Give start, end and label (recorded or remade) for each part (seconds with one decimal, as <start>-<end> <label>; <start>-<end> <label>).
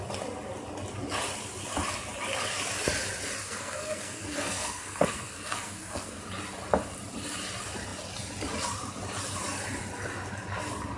0.0-3.4 recorded; 3.4-6.2 remade; 6.2-11.0 recorded